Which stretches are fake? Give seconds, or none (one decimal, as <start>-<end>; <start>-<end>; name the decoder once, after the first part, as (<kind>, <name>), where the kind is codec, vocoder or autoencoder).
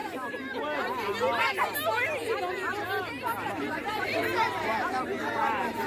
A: 3.5-5.9 (vocoder, BigVGAN v2)